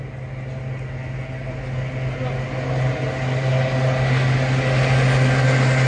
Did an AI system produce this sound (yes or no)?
no